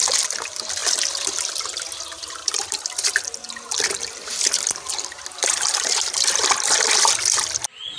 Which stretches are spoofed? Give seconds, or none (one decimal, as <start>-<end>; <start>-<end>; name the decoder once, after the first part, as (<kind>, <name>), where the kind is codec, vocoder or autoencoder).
2.4-4.1 (vocoder, BigVGAN v2); 5.4-6.0